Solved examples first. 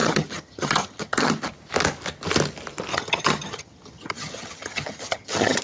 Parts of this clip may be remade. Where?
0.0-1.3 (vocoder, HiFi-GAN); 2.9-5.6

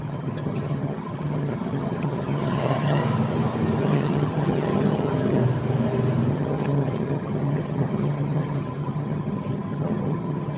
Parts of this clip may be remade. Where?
0.0-3.0 (vocoder, HiFi-GAN); 3.8-5.4; 6.3-10.6

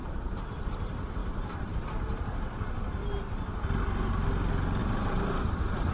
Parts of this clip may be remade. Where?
0.0-0.7 (vocoder, BigVGAN v2); 1.2-1.7; 4.8-5.9

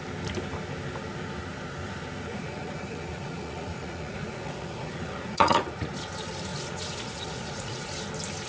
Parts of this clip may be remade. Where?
2.3-5.9 (vocoder, Vocos); 6.5-7.9

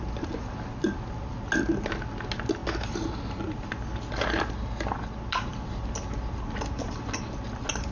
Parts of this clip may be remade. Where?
none

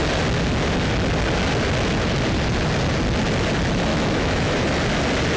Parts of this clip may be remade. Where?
3.9-4.7 (autoencoder, DAC-VAE)